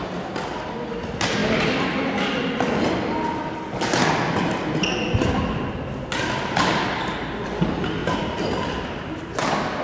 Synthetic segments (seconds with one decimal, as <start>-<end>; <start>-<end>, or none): none